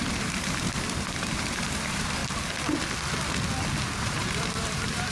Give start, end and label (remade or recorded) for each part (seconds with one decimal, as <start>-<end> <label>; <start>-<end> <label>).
0.0-2.2 remade; 2.2-3.8 recorded; 3.8-5.1 remade